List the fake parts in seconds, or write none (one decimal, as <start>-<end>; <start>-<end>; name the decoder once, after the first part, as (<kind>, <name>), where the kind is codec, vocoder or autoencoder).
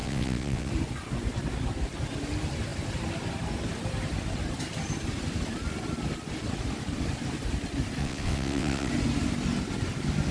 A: 0.0-0.7 (vocoder, WaveNeXt); 8.0-8.9